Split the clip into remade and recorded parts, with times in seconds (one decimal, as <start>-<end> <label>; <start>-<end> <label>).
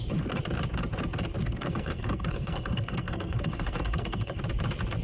0.0-1.4 recorded; 1.4-4.4 remade; 4.4-5.0 recorded